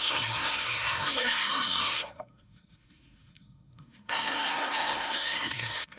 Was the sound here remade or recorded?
remade